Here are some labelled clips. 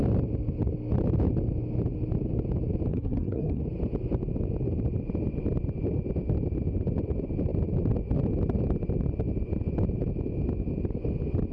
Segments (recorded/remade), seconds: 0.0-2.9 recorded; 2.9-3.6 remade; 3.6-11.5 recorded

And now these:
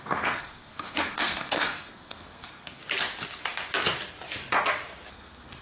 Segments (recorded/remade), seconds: 0.0-2.8 remade; 2.8-5.1 recorded; 5.1-5.6 remade

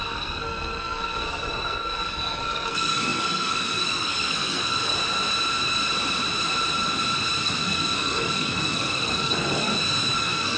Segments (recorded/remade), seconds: 0.0-4.9 remade; 4.9-7.4 recorded; 7.4-9.7 remade; 9.7-10.2 recorded; 10.2-10.6 remade

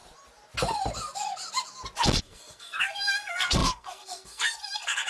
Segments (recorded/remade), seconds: 0.0-2.2 recorded; 2.2-5.1 remade

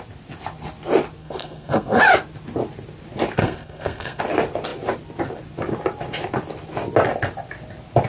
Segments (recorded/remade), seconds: 0.0-1.2 recorded; 1.2-2.0 remade; 2.0-3.4 recorded; 3.4-4.2 remade; 4.2-8.1 recorded